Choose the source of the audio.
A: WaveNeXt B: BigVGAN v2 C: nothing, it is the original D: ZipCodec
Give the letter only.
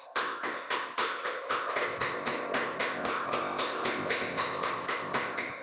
D